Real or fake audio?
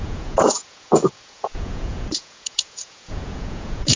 fake